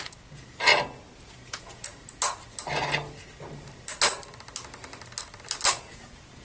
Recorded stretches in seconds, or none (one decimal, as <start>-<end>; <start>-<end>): 0.7-1.2; 1.9-5.7